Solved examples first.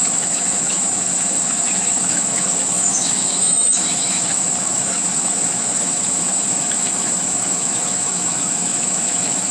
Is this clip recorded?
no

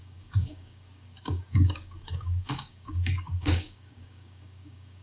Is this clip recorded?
no